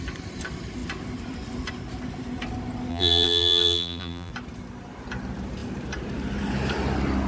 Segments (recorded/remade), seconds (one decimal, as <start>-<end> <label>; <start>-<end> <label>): 0.0-2.9 recorded; 2.9-4.3 remade; 4.3-7.3 recorded